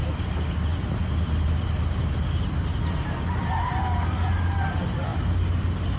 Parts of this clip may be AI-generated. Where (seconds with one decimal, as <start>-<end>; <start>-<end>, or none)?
none